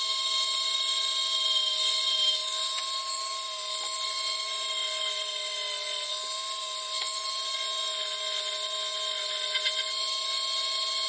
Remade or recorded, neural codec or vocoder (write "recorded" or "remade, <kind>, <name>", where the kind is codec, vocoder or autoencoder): recorded